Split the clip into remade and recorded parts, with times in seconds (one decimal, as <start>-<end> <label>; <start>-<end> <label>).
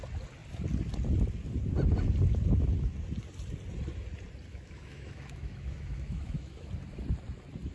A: 0.0-4.5 recorded; 4.5-6.7 remade; 6.7-7.7 recorded